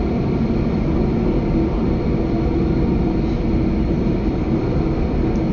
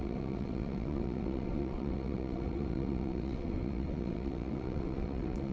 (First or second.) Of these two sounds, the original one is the first